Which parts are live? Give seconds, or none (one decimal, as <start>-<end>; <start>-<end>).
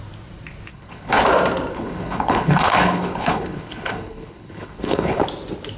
0.0-0.7; 1.2-1.7; 5.2-5.8